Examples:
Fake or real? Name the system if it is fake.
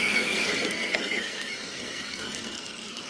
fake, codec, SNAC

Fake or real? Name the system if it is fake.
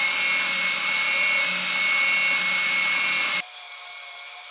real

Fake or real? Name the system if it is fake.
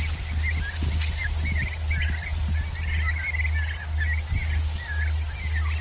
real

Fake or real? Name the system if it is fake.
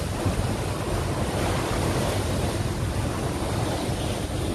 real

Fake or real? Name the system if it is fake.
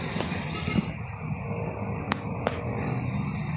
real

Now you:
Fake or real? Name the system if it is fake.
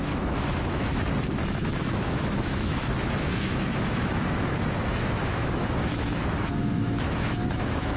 fake, autoencoder, DAC-VAE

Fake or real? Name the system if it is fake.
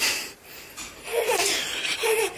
fake, vocoder, BigVGAN v2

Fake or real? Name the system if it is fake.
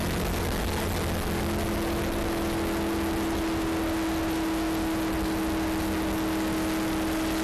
real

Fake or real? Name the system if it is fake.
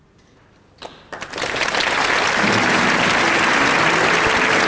real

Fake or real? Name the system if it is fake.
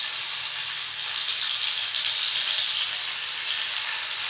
real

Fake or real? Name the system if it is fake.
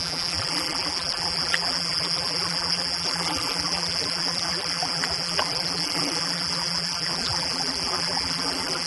fake, vocoder, BigVGAN v2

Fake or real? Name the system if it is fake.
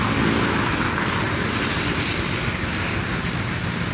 real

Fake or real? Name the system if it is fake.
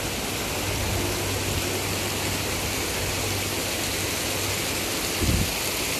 real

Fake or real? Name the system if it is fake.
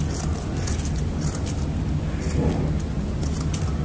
real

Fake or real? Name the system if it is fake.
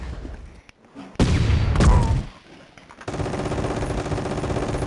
real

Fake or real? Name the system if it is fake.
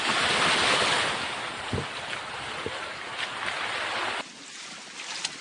real